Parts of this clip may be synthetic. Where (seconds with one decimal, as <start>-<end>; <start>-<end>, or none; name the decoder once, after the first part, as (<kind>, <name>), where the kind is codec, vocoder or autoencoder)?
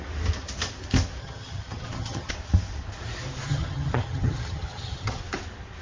1.2-2.3 (vocoder, HiFi-GAN); 3.5-5.2